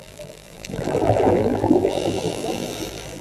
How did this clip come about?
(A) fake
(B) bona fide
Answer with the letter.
A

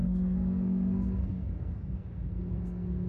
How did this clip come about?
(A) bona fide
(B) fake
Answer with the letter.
B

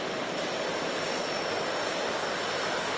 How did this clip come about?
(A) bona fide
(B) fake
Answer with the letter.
A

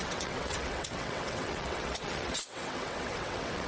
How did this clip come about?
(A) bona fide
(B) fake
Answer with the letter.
B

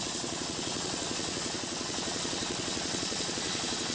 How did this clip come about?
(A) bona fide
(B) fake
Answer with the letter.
B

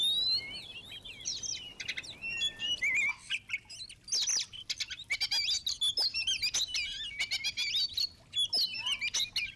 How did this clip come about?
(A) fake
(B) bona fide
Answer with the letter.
B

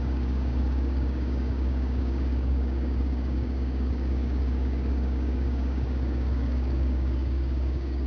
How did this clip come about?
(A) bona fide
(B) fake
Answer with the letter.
B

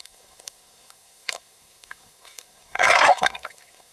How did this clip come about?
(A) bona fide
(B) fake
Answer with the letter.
B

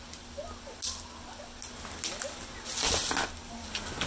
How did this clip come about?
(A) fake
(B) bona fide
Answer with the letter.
B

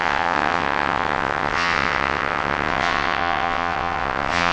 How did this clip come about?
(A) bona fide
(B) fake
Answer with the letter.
B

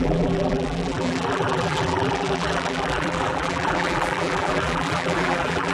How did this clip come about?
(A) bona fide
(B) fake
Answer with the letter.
B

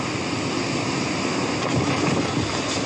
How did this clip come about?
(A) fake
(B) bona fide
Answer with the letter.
B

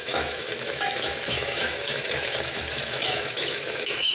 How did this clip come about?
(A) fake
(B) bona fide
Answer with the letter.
A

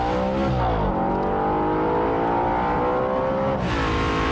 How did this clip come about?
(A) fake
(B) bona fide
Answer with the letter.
B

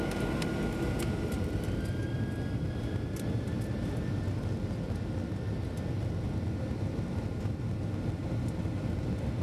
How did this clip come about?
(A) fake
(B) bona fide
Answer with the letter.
B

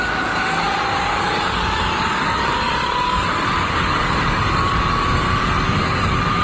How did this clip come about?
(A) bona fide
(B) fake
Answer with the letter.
B